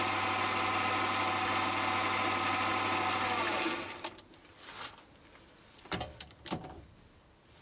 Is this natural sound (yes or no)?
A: yes